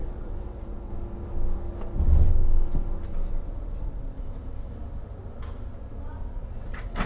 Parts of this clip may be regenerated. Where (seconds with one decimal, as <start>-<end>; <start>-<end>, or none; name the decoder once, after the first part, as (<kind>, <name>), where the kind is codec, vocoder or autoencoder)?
0.0-0.9 (vocoder, WaveNeXt); 3.4-4.3; 6.2-7.1